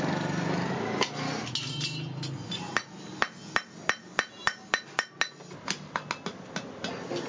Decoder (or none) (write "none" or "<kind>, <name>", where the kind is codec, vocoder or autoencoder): none